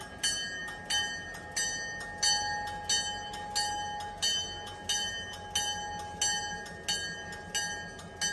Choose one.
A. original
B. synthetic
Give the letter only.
A